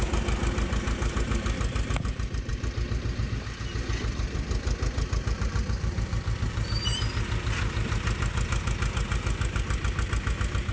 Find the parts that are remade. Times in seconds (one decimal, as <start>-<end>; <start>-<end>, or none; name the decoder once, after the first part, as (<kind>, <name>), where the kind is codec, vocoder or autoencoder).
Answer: none